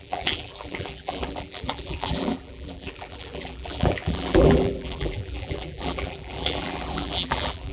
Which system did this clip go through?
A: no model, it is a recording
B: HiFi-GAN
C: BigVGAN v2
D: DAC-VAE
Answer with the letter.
C